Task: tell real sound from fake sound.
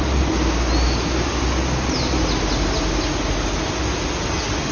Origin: real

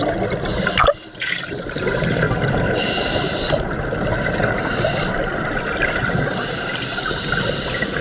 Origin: real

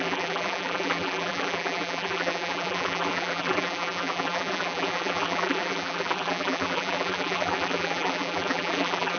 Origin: fake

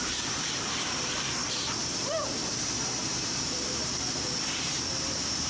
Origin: fake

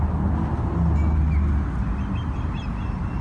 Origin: real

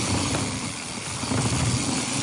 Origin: real